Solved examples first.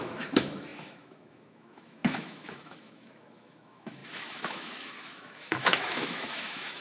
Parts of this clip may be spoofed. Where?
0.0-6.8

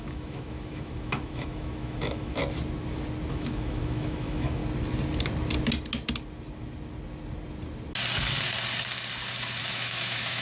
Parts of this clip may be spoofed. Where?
0.0-2.4; 3.3-4.6; 9.6-10.4

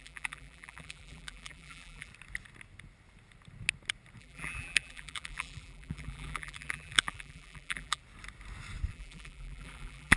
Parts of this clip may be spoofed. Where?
0.0-2.1; 4.2-8.0; 8.9-10.2

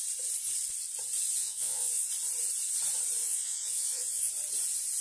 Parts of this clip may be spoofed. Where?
1.4-2.1; 3.2-4.3

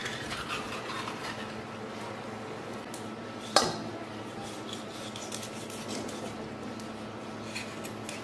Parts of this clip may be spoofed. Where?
0.0-1.4

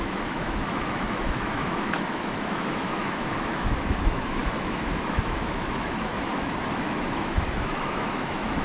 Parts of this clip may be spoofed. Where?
0.0-8.6